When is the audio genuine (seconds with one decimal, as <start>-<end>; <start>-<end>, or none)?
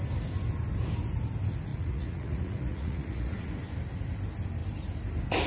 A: 0.0-1.7; 3.5-5.5